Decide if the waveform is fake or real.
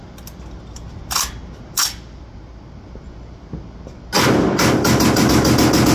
real